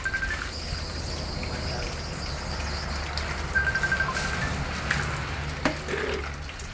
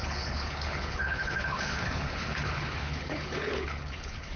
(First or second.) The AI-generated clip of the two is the second